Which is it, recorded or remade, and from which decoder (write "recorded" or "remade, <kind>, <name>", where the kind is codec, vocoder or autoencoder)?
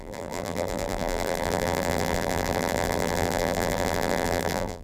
remade, vocoder, BigVGAN v2